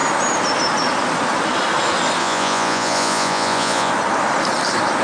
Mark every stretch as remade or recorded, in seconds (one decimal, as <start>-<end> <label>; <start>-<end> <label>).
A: 0.0-2.2 recorded; 2.2-3.9 remade; 3.9-5.0 recorded